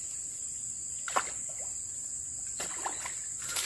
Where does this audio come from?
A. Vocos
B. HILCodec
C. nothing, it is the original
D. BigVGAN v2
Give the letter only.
C